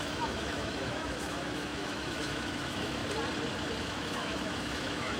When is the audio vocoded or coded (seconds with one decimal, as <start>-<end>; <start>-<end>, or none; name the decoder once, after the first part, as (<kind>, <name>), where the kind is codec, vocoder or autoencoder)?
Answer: 0.0-3.0 (autoencoder, DAC-VAE); 3.8-5.2